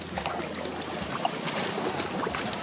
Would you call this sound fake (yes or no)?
no